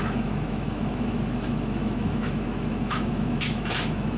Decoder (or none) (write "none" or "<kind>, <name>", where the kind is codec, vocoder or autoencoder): autoencoder, DAC-VAE